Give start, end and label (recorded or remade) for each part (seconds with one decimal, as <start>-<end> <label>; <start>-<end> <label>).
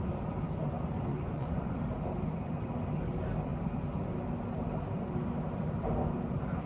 0.0-1.1 recorded; 1.1-1.8 remade; 1.8-6.7 recorded